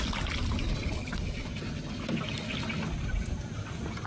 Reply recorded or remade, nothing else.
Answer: recorded